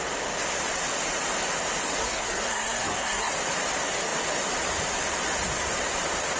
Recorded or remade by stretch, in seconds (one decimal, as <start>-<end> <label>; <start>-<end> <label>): 0.0-2.0 recorded; 2.0-3.3 remade; 3.3-6.4 recorded